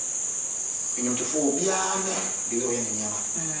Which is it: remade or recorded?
recorded